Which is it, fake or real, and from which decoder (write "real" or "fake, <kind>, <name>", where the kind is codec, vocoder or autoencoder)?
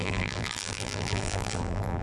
fake, vocoder, BigVGAN v2